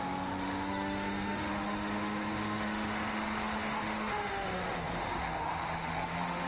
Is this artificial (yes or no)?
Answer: yes